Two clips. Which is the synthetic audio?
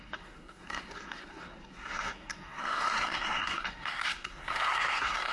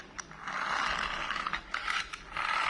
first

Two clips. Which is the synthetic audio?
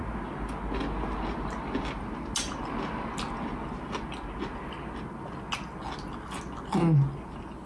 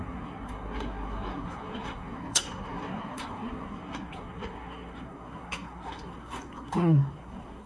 second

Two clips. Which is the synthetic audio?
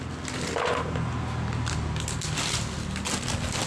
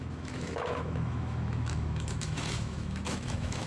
second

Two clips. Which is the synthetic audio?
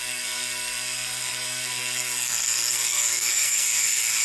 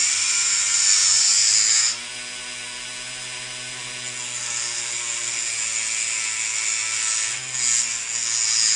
first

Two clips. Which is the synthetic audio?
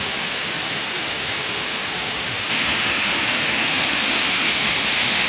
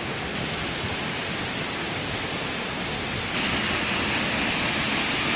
first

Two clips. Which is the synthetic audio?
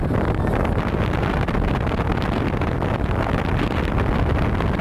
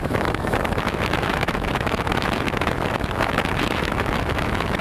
second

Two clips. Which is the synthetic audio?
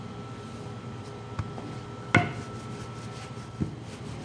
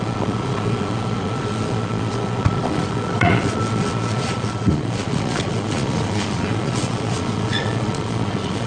second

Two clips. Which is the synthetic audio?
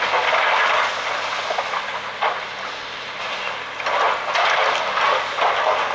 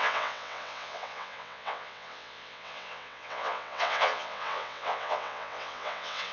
second